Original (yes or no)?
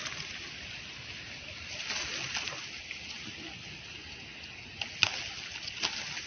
yes